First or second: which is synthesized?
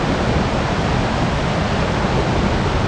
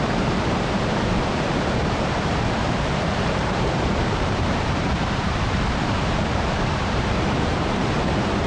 second